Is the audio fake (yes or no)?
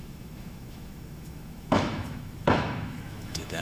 yes